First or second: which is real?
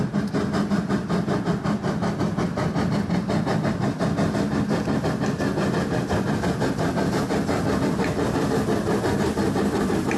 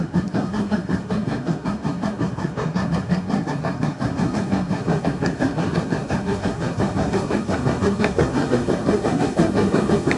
first